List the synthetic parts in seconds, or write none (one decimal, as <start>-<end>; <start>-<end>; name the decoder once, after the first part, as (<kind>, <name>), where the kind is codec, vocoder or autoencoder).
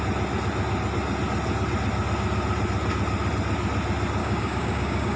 4.2-5.2 (codec, DAC)